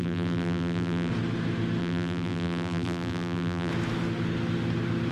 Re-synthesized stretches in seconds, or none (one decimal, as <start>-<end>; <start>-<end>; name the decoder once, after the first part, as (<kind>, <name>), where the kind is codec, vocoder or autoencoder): 0.0-1.1 (vocoder, BigVGAN v2); 1.8-3.7